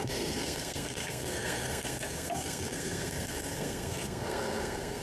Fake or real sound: fake